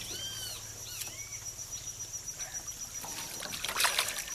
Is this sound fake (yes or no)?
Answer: no